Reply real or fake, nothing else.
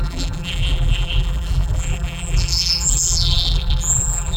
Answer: fake